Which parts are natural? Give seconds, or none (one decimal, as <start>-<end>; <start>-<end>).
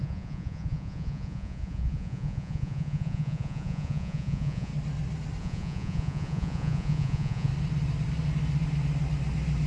4.7-5.4; 7.5-9.7